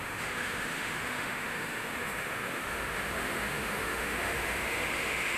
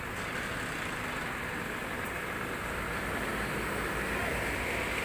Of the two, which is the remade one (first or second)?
first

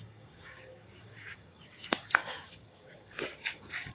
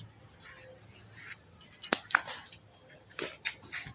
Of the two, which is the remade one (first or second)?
first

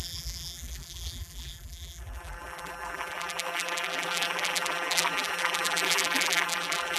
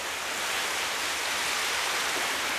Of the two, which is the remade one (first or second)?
first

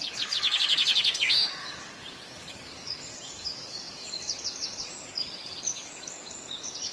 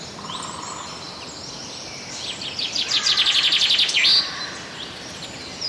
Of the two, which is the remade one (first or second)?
first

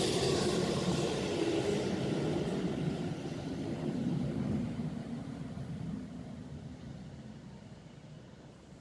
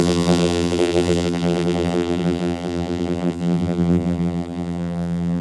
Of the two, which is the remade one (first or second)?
second